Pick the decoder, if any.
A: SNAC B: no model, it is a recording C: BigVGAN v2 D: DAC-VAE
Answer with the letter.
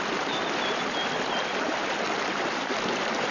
B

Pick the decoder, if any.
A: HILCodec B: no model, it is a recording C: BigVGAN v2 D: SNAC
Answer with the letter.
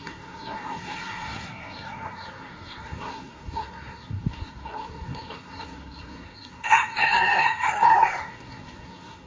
D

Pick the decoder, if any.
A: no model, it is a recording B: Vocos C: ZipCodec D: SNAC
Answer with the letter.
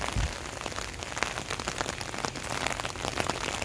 A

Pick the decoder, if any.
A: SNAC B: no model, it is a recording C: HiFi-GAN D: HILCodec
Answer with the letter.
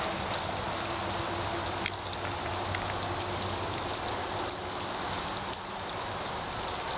B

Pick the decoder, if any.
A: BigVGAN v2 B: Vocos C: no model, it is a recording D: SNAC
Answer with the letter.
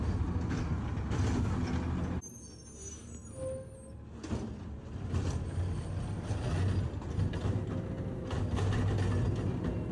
C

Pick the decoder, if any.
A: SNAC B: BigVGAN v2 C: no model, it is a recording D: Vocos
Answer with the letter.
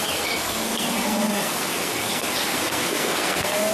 A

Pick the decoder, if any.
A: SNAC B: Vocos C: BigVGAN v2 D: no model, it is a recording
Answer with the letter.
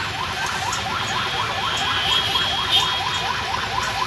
D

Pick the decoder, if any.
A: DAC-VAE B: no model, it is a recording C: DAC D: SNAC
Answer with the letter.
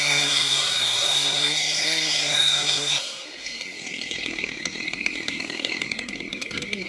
D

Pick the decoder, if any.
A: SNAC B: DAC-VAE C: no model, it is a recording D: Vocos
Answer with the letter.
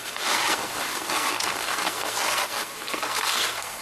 A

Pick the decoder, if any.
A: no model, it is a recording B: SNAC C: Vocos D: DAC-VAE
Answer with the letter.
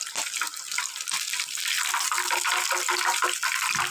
A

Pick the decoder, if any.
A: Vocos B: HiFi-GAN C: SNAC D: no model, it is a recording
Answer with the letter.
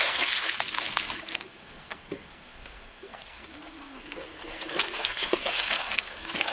C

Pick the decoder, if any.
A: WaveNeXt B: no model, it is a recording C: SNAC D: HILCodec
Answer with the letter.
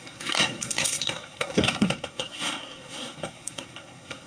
C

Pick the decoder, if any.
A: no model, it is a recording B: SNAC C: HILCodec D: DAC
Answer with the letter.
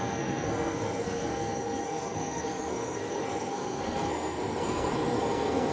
B